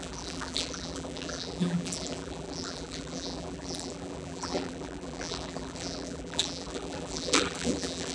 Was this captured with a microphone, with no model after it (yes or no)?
no